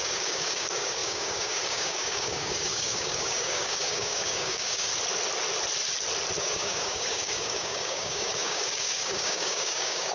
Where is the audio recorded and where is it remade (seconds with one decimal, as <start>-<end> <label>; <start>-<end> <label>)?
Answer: 0.0-4.9 remade; 4.9-6.4 recorded; 6.4-10.1 remade

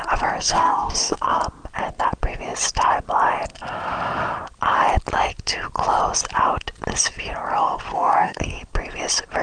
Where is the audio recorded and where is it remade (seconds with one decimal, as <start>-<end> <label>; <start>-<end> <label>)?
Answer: 0.0-0.4 recorded; 0.4-1.4 remade; 1.4-7.9 recorded; 7.9-8.6 remade; 8.6-9.4 recorded

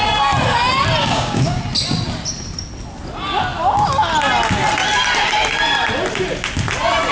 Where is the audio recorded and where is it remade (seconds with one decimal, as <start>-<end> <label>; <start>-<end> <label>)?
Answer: 0.0-1.0 recorded; 1.0-1.6 remade; 1.6-7.1 recorded

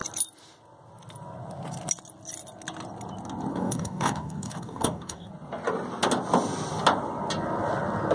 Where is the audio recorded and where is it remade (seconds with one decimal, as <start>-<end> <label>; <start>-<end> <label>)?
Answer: 0.0-3.5 recorded; 3.5-5.3 remade; 5.3-8.1 recorded

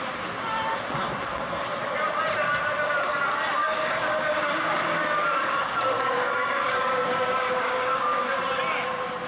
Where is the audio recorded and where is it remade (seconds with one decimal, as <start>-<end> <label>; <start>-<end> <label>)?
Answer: 0.0-3.6 recorded; 3.6-8.2 remade; 8.2-9.3 recorded